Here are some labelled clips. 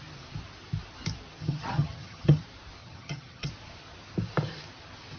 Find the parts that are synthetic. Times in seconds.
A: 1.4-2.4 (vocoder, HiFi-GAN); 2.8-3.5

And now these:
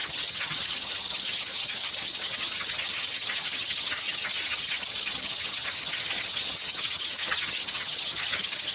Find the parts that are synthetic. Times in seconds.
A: 0.0-8.7 (vocoder, HiFi-GAN)